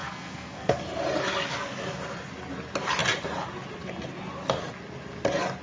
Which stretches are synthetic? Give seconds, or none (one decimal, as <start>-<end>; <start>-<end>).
0.0-0.8